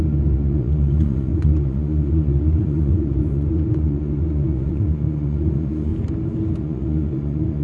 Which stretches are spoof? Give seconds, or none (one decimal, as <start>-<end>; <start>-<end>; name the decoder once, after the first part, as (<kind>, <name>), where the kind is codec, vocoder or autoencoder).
0.0-5.9 (vocoder, Vocos); 6.6-7.6